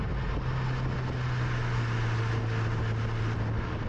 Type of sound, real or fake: real